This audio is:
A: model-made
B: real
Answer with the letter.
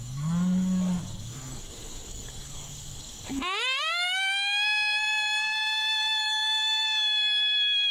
A